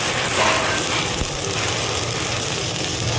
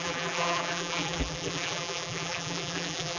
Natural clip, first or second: first